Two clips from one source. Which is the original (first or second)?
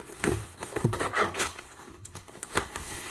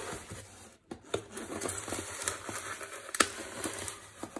second